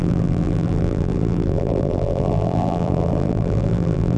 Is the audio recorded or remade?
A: remade